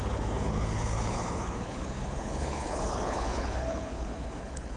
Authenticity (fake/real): fake